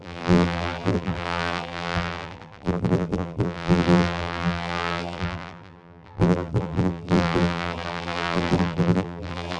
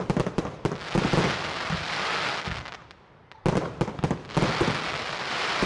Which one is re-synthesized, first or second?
first